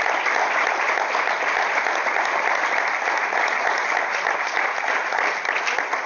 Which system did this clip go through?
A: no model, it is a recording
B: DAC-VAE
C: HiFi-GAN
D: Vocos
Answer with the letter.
A